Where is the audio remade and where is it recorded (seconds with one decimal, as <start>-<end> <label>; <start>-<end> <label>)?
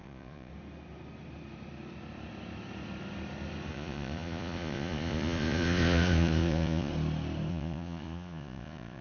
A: 0.0-0.5 remade; 0.5-3.7 recorded; 3.7-6.9 remade; 6.9-7.5 recorded; 7.5-9.0 remade